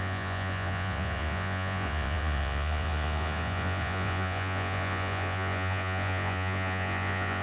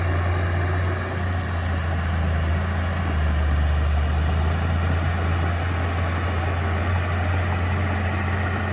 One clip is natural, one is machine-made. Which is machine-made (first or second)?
first